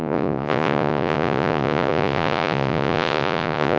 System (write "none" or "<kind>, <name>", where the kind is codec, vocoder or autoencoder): vocoder, Vocos